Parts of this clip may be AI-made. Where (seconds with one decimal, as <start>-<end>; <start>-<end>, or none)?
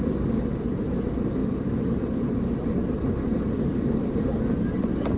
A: none